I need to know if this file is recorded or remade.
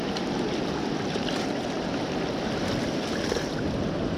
recorded